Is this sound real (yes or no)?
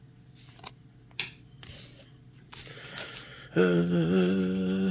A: yes